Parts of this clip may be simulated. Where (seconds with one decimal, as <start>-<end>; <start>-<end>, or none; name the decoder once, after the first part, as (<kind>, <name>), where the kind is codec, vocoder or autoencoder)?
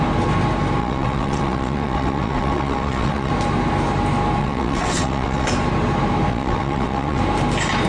0.8-3.3 (vocoder, WaveNeXt); 4.4-5.5; 6.3-7.2